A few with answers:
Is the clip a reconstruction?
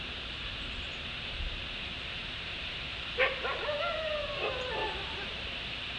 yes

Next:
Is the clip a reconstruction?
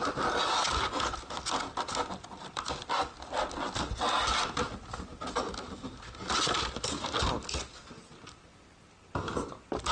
no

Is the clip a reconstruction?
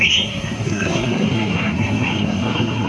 yes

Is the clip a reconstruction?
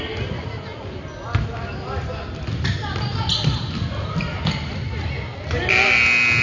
no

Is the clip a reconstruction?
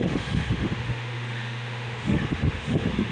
yes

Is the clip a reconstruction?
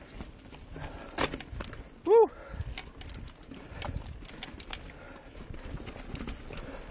no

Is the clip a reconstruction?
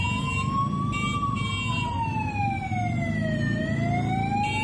no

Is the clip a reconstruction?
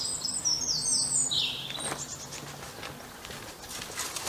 no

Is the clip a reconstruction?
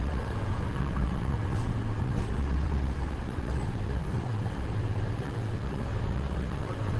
yes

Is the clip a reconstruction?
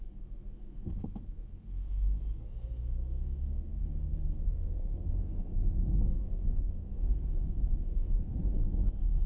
yes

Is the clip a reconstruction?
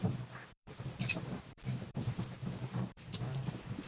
yes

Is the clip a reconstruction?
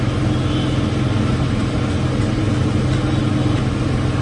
no